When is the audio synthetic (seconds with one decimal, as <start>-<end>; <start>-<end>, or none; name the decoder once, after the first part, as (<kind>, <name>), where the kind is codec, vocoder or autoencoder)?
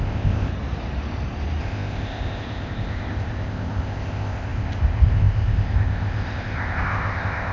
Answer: 0.0-0.5 (codec, ZipCodec); 1.6-7.5